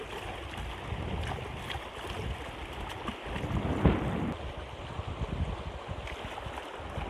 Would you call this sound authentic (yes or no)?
yes